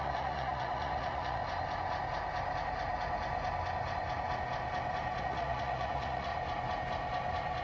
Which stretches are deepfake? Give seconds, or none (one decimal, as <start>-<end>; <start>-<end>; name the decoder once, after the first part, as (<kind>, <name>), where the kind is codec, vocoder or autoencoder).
0.0-1.4 (vocoder, Vocos); 5.2-6.3